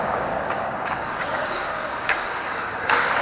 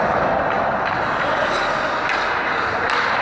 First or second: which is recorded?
second